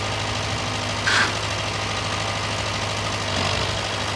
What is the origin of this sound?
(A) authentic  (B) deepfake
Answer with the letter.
A